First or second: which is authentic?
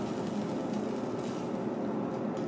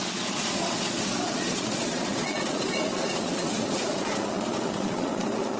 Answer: first